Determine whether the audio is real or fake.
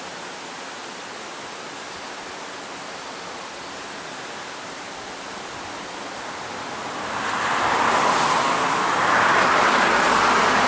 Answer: real